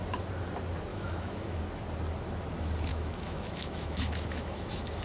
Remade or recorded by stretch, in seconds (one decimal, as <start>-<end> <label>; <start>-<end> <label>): 0.0-0.9 recorded; 0.9-1.6 remade; 1.6-2.9 recorded; 2.9-5.0 remade

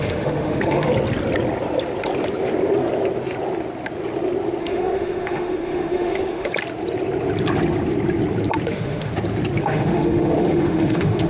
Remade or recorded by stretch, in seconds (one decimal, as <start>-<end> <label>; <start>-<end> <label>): 0.0-0.9 remade; 0.9-4.6 recorded; 4.6-6.5 remade; 6.5-8.7 recorded; 8.7-9.1 remade; 9.1-9.6 recorded; 9.6-11.3 remade

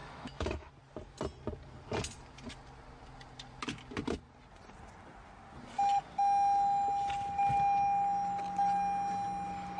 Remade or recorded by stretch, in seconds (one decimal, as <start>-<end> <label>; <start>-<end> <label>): 0.0-0.7 remade; 0.7-9.8 recorded

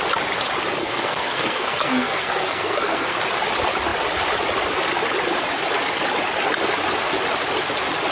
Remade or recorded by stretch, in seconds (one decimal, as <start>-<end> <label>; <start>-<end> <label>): 0.0-0.8 recorded; 0.8-3.2 remade; 3.2-8.1 recorded